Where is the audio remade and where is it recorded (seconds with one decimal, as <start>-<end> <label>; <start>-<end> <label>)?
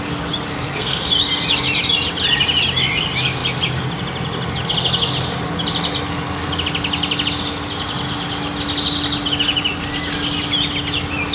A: 0.0-0.5 recorded; 0.5-1.1 remade; 1.1-11.3 recorded